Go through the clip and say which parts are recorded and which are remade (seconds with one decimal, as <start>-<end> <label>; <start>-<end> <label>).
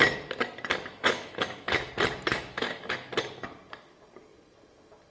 0.0-0.9 recorded; 0.9-1.9 remade; 1.9-2.3 recorded; 2.3-3.1 remade; 3.1-5.1 recorded